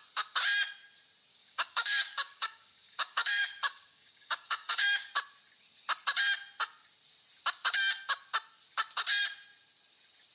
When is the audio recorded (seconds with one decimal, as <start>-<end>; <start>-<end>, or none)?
0.0-1.3; 5.1-10.3